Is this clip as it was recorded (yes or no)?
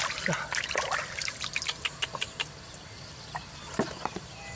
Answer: yes